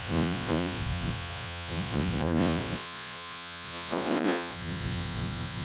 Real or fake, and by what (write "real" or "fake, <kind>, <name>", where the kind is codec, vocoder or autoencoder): fake, vocoder, Vocos